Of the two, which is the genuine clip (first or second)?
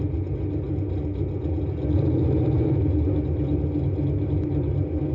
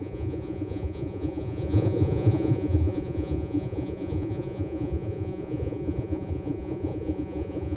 first